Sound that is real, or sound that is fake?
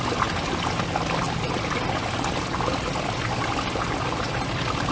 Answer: real